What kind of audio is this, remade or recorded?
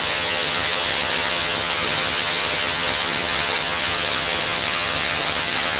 remade